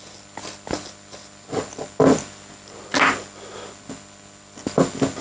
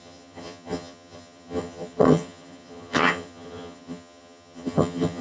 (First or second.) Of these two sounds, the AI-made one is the second